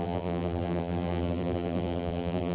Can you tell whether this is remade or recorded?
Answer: remade